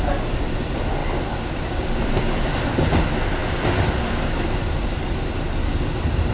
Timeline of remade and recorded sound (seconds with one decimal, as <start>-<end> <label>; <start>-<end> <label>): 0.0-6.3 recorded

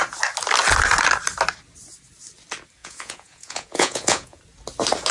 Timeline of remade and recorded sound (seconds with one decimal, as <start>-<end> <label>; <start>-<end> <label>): 0.0-2.8 recorded; 2.8-4.4 remade; 4.4-5.1 recorded

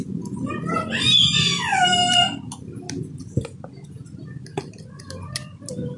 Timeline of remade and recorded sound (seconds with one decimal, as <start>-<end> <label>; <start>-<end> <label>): 0.0-6.0 recorded